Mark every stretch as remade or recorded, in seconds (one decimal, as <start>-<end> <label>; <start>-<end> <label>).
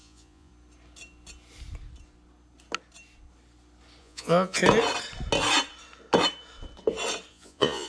0.0-0.5 remade; 0.5-4.0 recorded; 4.0-4.6 remade; 4.6-7.3 recorded; 7.3-7.9 remade